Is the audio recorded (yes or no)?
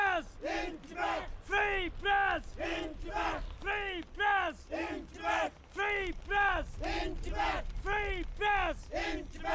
yes